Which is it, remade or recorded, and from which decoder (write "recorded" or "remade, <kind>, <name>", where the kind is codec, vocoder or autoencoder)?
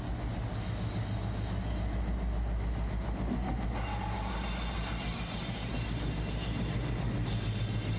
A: recorded